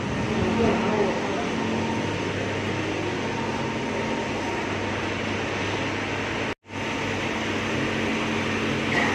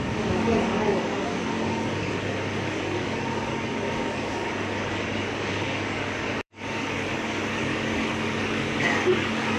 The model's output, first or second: second